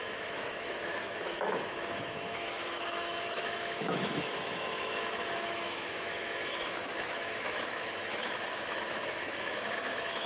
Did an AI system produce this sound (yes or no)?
yes